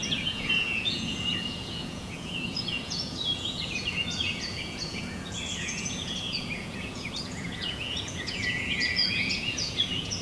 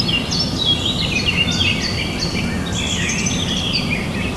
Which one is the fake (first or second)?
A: first